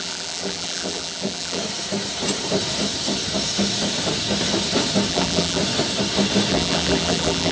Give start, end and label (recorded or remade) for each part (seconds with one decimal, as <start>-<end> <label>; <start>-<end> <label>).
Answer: 0.0-1.6 remade; 1.6-5.1 recorded; 5.1-5.6 remade; 5.6-6.5 recorded; 6.5-7.5 remade